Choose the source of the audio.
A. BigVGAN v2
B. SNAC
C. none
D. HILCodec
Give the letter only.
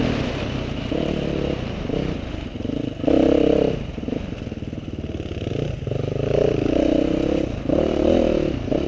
C